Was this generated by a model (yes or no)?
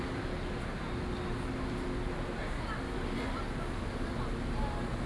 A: no